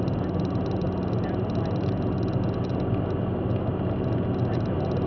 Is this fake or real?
real